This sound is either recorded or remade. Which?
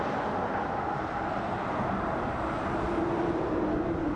recorded